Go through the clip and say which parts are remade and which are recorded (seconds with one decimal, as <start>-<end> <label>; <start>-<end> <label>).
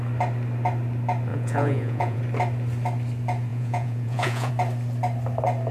0.0-1.3 recorded; 1.3-2.2 remade; 2.2-3.5 recorded; 3.5-4.5 remade; 4.5-5.7 recorded